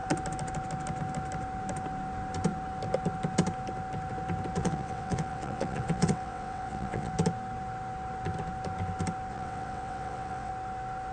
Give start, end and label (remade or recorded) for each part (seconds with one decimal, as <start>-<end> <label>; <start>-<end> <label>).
0.0-4.6 recorded; 4.6-7.1 remade; 7.1-9.3 recorded; 9.3-10.5 remade; 10.5-11.1 recorded